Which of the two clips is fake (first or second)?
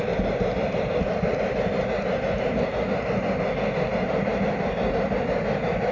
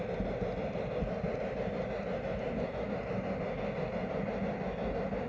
first